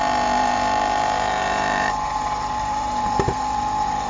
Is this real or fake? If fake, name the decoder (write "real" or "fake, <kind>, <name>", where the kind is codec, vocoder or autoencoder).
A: fake, vocoder, BigVGAN v2